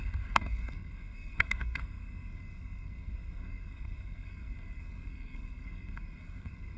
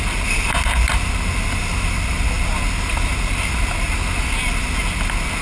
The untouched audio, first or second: second